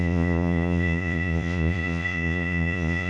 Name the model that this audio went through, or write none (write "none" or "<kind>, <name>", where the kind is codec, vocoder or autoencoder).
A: vocoder, Vocos